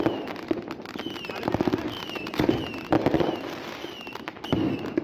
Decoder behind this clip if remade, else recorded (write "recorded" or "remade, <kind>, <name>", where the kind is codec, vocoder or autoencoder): recorded